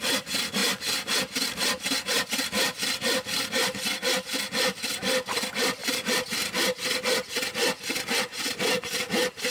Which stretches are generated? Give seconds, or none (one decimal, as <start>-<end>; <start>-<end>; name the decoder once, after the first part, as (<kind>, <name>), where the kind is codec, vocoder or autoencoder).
5.8-6.8 (vocoder, BigVGAN v2)